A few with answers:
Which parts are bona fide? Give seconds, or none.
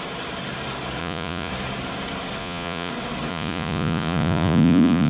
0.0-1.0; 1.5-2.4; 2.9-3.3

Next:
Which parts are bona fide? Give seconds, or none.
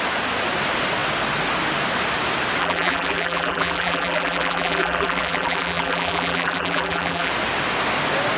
0.0-2.6; 7.3-8.4